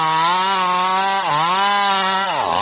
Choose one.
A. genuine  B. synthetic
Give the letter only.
A